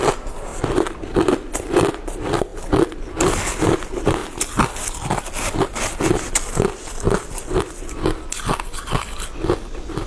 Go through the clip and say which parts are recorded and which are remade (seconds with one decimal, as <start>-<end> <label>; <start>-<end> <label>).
0.0-10.1 recorded